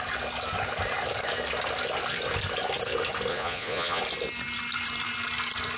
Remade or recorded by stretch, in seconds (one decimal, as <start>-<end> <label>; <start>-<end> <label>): 0.0-3.3 recorded; 3.3-4.0 remade; 4.0-5.8 recorded